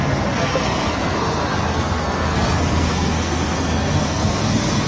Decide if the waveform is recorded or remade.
remade